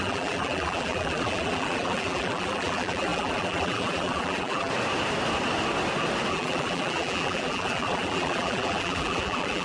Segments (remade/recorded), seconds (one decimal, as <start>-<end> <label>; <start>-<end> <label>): 0.0-4.7 remade; 4.7-6.3 recorded; 6.3-9.6 remade